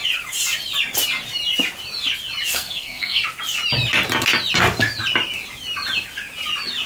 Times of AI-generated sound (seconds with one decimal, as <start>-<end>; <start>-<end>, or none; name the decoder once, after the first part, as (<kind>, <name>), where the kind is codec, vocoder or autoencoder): 2.5-3.2 (codec, SNAC)